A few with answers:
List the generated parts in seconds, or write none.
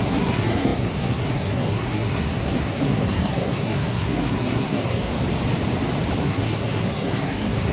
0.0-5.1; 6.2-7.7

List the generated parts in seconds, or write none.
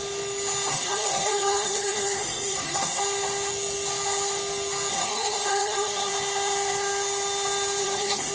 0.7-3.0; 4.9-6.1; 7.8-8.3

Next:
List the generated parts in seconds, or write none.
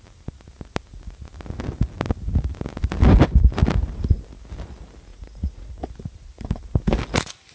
5.1-5.8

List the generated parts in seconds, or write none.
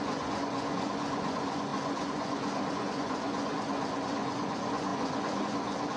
0.0-6.0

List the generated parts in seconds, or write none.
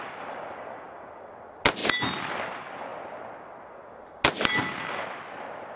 none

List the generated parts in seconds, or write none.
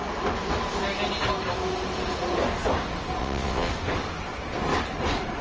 3.2-3.7